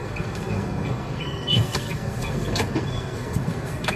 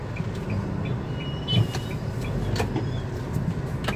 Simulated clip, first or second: first